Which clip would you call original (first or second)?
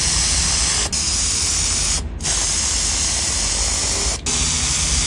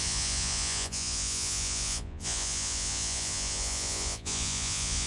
first